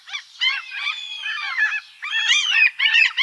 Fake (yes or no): yes